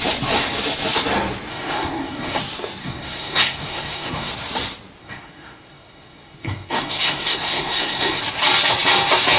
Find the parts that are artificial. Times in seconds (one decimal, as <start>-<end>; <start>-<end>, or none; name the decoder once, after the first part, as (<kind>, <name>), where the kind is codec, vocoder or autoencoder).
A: 1.5-2.4 (codec, SNAC); 2.8-4.3; 5.0-8.2

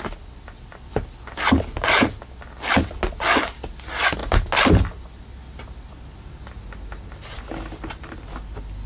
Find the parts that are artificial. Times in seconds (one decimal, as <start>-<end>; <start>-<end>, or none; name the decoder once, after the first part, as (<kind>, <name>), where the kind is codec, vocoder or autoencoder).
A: none

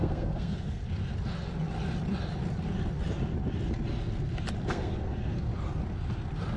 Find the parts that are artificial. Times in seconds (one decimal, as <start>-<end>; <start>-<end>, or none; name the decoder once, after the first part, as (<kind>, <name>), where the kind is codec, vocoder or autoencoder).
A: 0.0-0.8 (codec, SNAC); 4.7-5.5

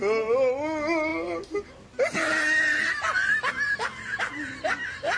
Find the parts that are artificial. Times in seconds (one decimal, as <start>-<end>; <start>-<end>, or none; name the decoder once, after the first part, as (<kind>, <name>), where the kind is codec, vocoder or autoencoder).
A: none

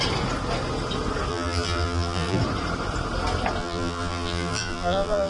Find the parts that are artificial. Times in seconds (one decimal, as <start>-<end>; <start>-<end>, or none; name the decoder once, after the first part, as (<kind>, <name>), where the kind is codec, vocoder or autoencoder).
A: 1.3-2.4 (vocoder, BigVGAN v2); 3.6-5.3